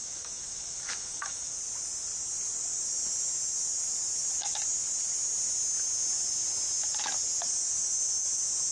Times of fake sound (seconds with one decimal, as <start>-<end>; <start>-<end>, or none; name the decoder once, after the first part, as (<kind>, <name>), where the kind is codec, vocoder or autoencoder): 0.0-1.5 (autoencoder, DAC-VAE)